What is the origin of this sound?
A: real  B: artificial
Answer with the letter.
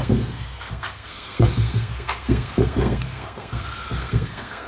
B